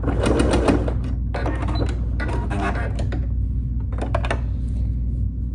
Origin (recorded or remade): recorded